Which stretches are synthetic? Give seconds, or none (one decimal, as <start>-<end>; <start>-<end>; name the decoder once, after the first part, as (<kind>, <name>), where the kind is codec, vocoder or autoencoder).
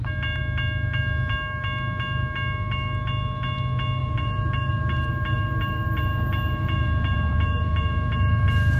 4.0-8.8 (vocoder, BigVGAN v2)